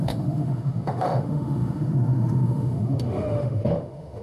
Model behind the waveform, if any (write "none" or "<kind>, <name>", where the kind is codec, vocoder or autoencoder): autoencoder, DAC-VAE